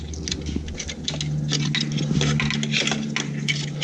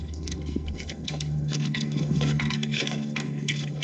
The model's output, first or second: second